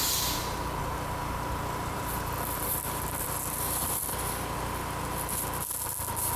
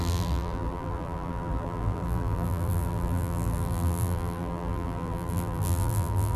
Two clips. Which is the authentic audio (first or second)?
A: first